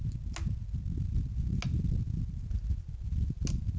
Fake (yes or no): no